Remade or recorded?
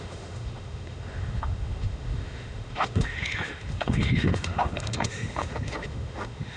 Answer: remade